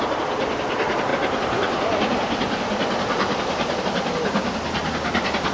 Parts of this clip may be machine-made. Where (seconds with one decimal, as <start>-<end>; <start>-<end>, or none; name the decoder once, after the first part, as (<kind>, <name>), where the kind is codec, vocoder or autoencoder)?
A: none